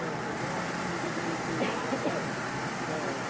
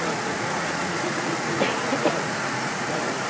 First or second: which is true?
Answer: first